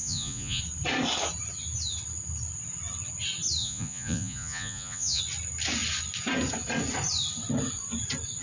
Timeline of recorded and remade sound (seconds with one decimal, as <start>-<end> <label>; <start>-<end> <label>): 0.0-0.6 remade; 0.6-3.6 recorded; 3.6-5.2 remade; 5.2-8.4 recorded